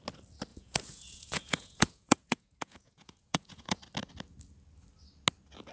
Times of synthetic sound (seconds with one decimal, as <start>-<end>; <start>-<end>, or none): 0.5-3.8